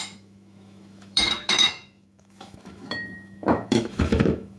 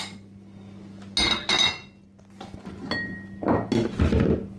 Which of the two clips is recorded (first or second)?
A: second